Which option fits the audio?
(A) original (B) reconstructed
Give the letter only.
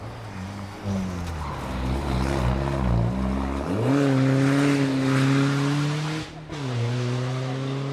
A